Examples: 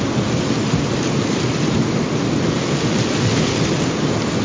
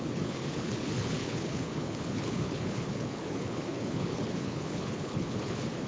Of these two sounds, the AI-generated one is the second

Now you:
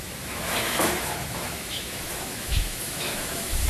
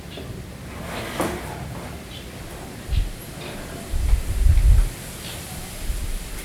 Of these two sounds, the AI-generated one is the first